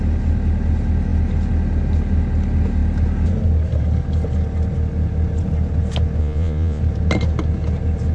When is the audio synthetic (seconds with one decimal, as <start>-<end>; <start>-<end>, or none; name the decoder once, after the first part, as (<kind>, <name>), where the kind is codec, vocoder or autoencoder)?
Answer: 6.2-6.8 (vocoder, Vocos)